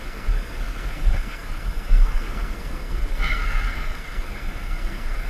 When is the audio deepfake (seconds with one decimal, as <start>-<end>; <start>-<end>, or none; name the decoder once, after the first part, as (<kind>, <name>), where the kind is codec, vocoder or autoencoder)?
0.0-5.3 (codec, SNAC)

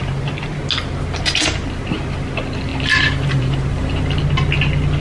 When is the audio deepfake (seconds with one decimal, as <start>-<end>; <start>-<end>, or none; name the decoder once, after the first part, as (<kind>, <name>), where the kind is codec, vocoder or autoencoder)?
2.7-4.2 (vocoder, BigVGAN v2)

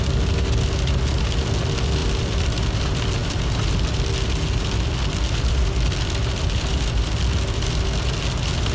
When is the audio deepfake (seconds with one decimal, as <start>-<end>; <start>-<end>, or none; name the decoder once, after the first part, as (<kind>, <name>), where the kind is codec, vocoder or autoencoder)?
2.0-2.6 (vocoder, BigVGAN v2); 3.2-3.7